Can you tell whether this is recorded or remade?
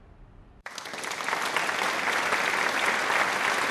recorded